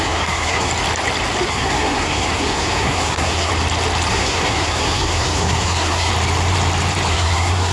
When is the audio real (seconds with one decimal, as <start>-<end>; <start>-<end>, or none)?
0.7-1.5; 3.5-4.1; 6.1-7.1